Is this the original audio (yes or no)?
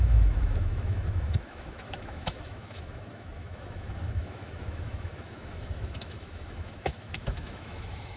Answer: no